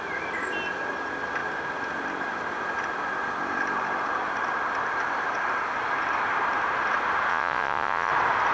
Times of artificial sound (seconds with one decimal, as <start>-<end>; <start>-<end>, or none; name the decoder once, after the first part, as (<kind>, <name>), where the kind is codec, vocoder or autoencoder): 7.3-8.1 (vocoder, Vocos)